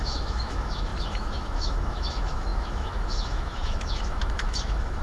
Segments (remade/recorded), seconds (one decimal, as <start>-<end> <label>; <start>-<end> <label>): 0.0-5.0 remade